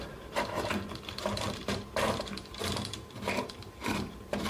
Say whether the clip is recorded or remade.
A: remade